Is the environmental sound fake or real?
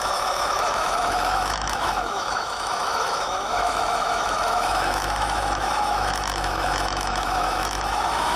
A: fake